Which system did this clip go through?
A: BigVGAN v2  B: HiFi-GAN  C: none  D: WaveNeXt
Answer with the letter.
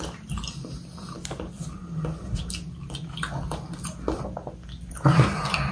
C